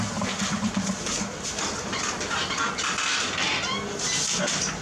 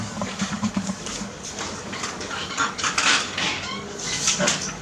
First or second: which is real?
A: first